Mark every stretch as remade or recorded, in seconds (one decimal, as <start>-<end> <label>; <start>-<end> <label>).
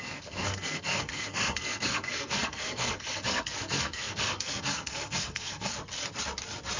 0.0-5.7 remade; 5.7-6.8 recorded